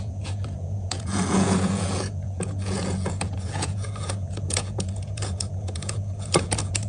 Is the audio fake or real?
fake